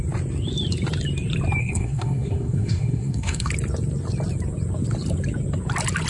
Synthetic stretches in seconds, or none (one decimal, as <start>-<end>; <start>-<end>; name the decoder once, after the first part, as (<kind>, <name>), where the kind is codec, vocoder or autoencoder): 1.6-3.5 (codec, SNAC)